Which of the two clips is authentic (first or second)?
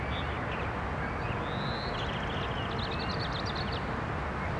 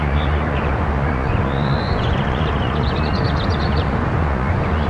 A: first